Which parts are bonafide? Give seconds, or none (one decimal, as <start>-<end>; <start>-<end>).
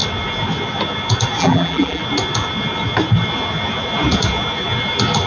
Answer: 0.0-1.4; 2.0-5.3